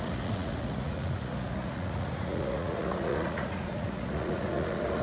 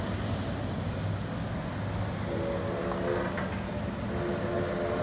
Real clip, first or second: second